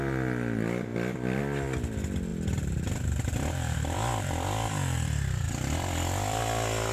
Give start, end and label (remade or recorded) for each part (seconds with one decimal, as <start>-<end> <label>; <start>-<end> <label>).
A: 0.0-0.9 recorded; 0.9-1.4 remade; 1.4-2.3 recorded; 2.3-6.4 remade; 6.4-6.9 recorded

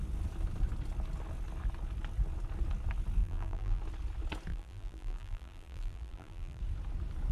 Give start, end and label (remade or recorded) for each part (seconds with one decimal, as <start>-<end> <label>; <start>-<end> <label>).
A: 0.0-3.2 recorded; 3.2-3.8 remade; 3.8-4.5 recorded; 4.5-6.6 remade; 6.6-7.3 recorded

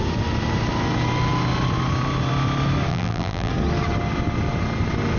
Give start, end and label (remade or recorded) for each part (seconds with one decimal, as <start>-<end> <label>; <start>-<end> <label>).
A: 0.0-2.9 recorded; 2.9-3.5 remade; 3.5-5.2 recorded

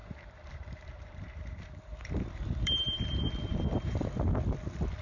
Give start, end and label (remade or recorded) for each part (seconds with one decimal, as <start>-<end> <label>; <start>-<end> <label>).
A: 0.0-3.0 remade; 3.0-3.5 recorded; 3.5-4.1 remade; 4.1-5.0 recorded

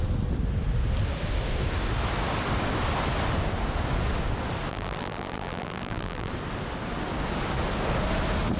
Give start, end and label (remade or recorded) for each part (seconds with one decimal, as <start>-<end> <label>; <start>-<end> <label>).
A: 0.0-4.7 recorded; 4.7-6.3 remade; 6.3-8.6 recorded